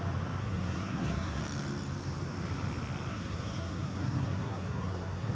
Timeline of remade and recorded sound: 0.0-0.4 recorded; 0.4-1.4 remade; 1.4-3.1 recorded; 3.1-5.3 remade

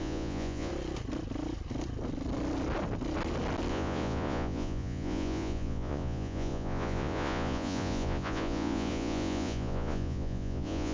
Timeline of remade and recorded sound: 0.0-0.7 remade; 0.7-3.7 recorded; 3.7-10.9 remade

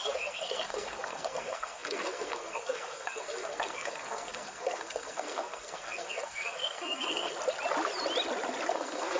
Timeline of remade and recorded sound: 0.0-7.3 remade; 7.3-8.7 recorded; 8.7-9.2 remade

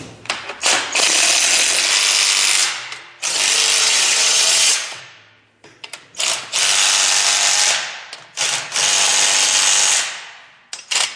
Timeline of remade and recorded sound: 0.0-3.8 recorded; 3.8-5.0 remade; 5.0-11.2 recorded